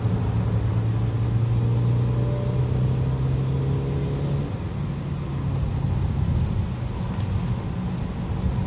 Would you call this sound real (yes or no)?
yes